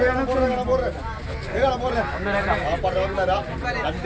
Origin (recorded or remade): recorded